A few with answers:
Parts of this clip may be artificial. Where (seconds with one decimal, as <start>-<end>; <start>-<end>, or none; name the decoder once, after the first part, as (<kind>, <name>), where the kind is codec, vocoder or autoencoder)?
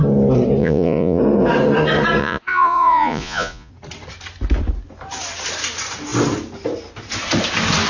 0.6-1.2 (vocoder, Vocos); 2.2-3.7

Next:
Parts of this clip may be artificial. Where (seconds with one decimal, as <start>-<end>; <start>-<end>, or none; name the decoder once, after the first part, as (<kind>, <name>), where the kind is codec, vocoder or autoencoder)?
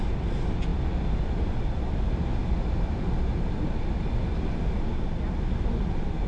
none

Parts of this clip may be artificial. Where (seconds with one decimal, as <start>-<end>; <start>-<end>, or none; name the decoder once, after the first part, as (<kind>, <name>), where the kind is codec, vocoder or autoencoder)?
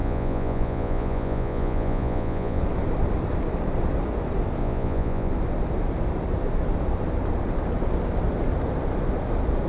0.0-2.6 (vocoder, Vocos); 4.6-5.3